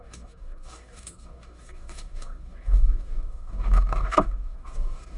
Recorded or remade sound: remade